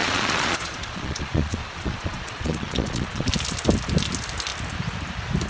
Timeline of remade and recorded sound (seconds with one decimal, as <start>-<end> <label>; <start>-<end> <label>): 0.0-3.3 remade; 3.3-5.5 recorded